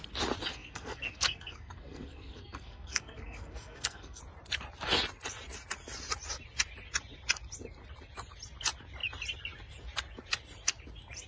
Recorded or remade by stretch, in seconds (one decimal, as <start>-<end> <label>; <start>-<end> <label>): 0.0-0.5 recorded; 0.5-4.2 remade; 4.2-11.3 recorded